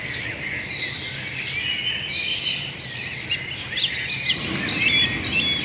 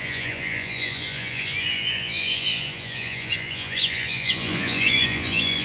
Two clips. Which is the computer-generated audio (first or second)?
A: second